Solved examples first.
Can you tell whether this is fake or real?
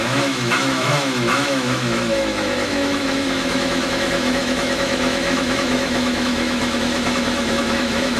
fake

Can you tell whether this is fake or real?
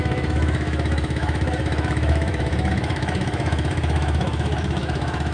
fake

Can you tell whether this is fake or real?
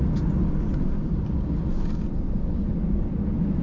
real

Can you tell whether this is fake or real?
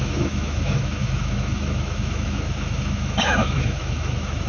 fake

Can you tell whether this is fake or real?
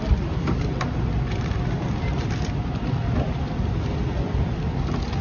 real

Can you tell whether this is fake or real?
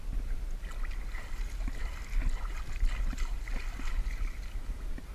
real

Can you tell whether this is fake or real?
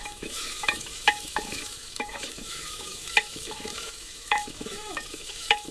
fake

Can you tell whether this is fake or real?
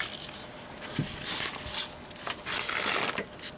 real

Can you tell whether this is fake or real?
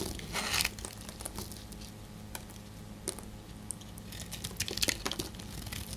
real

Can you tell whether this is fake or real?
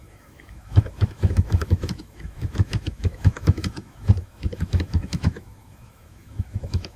fake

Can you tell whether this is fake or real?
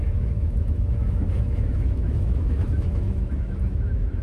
fake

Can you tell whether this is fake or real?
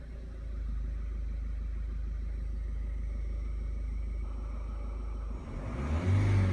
real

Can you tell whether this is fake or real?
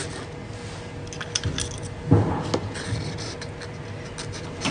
real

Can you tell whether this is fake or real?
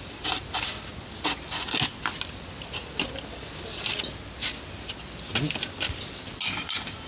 real